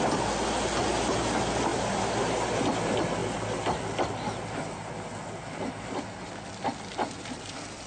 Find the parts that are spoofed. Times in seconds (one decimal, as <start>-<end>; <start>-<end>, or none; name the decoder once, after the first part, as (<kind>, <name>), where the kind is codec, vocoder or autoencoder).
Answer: 1.7-2.2 (vocoder, BigVGAN v2)